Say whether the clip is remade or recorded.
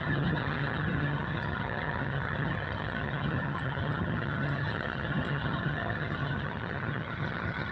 remade